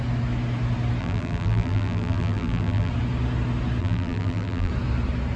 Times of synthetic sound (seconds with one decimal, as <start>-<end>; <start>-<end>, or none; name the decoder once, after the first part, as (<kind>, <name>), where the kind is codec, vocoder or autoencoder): 1.0-2.9 (vocoder, BigVGAN v2); 3.8-4.7